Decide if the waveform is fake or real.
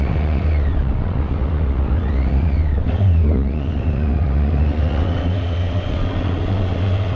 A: fake